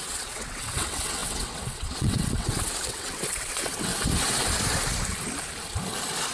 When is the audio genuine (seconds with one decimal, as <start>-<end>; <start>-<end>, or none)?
3.9-6.3